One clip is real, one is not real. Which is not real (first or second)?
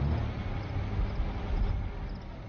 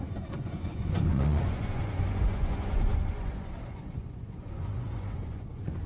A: second